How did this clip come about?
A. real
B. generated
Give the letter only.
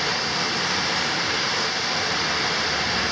B